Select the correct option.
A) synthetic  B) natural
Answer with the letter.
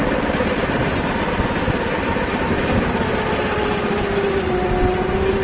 B